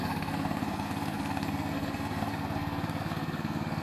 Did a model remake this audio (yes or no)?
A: yes